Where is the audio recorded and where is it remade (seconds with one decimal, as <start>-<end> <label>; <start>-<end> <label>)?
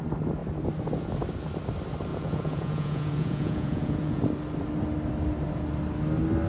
0.0-2.1 recorded; 2.1-4.2 remade; 4.2-6.5 recorded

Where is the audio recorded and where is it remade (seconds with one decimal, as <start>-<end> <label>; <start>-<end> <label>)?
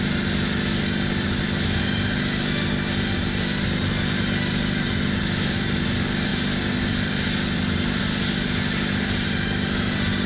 0.0-10.3 recorded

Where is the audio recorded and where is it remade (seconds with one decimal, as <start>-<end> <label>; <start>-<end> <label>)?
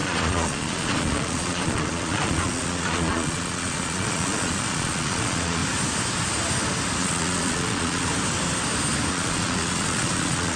0.0-5.6 remade; 5.6-7.0 recorded; 7.0-8.1 remade; 8.1-9.1 recorded; 9.1-10.6 remade